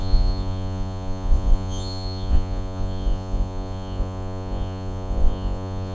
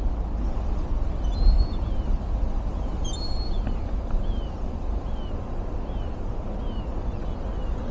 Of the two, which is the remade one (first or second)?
first